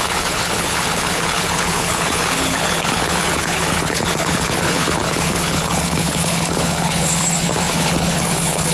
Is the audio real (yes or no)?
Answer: no